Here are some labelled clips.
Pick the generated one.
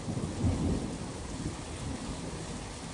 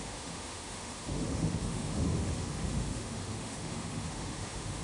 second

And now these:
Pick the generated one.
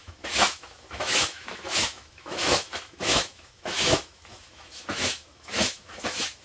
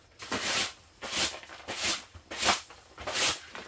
first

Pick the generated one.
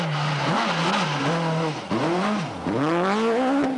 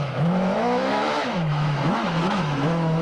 second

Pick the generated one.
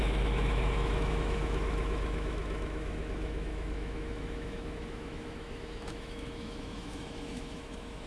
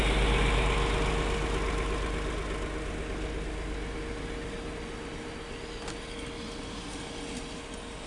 first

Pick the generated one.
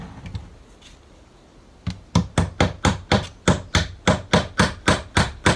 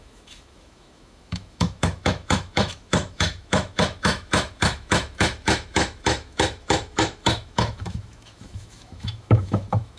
second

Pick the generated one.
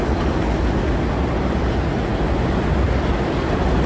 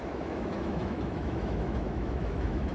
second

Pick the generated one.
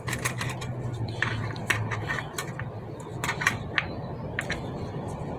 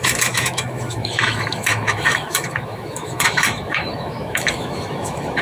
second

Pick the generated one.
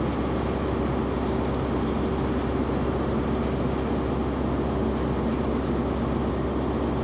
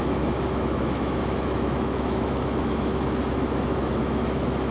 second